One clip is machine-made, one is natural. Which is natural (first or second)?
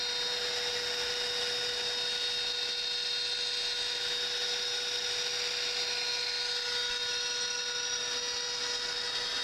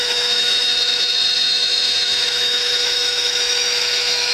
first